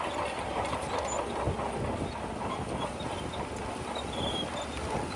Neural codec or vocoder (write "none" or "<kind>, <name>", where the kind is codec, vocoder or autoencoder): none